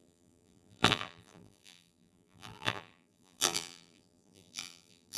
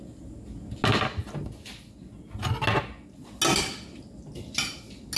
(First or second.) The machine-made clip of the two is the first